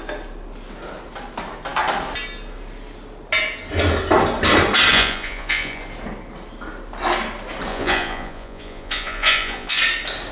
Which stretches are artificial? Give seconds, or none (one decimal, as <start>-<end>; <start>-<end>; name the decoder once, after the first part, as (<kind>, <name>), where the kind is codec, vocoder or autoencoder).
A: 4.9-5.8 (vocoder, Vocos); 7.7-9.8